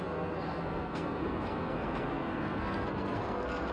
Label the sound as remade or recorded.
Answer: remade